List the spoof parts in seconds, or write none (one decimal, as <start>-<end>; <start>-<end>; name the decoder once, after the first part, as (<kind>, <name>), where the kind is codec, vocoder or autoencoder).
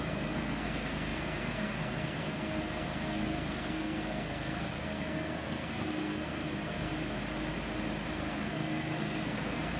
0.0-6.9 (codec, SNAC); 8.1-9.8